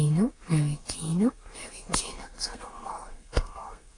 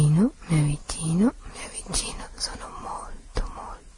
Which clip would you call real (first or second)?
second